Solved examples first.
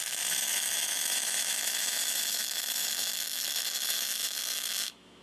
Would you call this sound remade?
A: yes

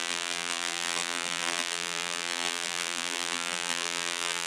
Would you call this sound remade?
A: yes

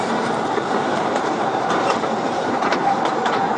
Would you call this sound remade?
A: yes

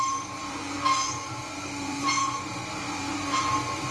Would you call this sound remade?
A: yes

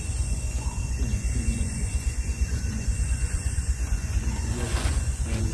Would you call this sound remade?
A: yes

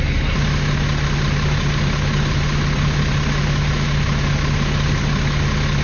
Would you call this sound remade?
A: no